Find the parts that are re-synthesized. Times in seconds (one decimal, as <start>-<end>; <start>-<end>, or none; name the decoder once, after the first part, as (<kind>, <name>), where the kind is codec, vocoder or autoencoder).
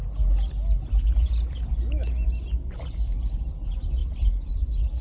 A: none